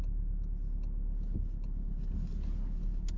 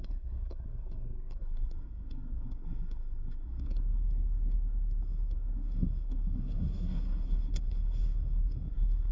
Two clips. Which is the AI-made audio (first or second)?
second